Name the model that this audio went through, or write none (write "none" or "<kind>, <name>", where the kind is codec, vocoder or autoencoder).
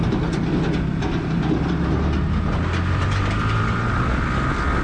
none